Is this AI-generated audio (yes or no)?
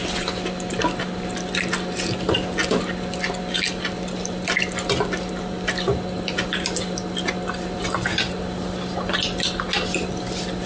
no